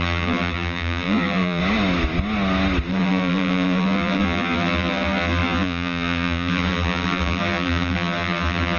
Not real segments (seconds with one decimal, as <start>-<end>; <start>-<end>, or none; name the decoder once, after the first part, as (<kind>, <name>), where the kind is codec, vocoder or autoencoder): 0.0-1.6 (vocoder, BigVGAN v2); 2.9-8.8